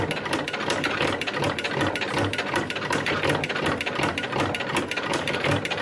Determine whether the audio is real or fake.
real